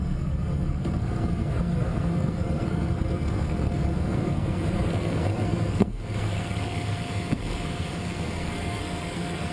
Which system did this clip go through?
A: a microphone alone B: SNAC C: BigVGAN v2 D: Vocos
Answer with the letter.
B